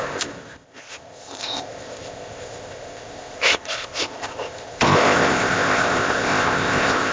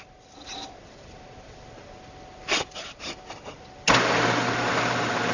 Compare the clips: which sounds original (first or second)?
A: second